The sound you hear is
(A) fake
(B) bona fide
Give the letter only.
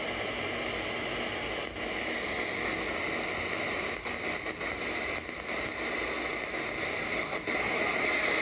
B